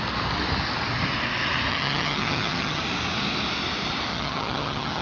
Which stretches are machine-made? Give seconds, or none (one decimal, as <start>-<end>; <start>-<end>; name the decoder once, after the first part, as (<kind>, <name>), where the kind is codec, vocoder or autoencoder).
1.7-2.8 (vocoder, HiFi-GAN); 4.1-5.0